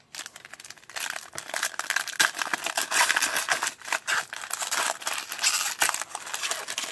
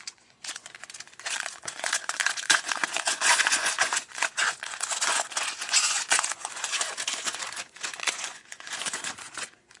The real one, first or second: first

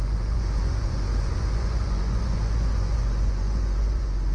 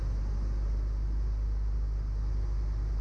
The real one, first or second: second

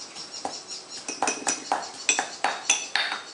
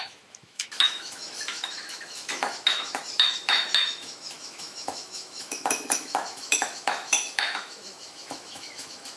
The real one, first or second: first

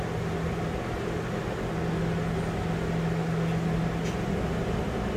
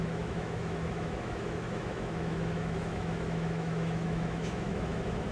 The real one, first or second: first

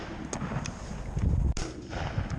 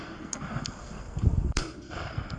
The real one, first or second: first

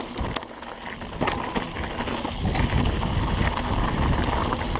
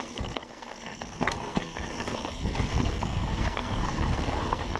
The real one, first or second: first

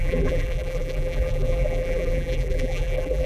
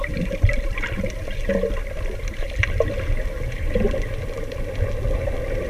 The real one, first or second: second